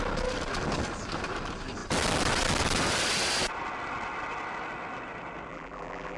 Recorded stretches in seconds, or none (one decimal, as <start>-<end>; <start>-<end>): 0.0-5.5